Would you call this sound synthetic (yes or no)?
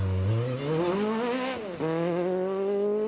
no